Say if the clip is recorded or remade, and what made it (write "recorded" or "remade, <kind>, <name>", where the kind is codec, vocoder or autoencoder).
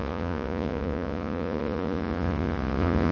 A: remade, vocoder, Vocos